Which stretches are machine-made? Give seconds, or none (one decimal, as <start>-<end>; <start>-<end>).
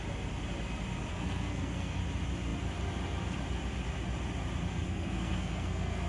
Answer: 1.1-2.0; 4.7-6.1